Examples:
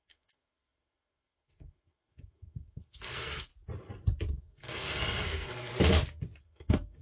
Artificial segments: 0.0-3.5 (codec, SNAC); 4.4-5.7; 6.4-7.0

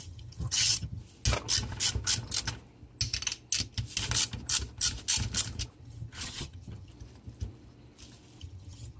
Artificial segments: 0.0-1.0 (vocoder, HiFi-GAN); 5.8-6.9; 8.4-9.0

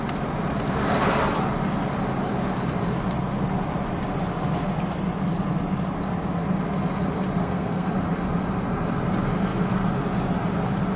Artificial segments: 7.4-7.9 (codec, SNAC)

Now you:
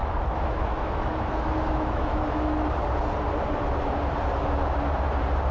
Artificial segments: 0.0-2.7 (autoencoder, DAC-VAE)

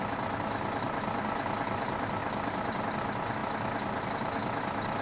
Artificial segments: 2.2-2.8 (vocoder, BigVGAN v2)